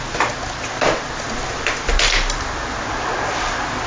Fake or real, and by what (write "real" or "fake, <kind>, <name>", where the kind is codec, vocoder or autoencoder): real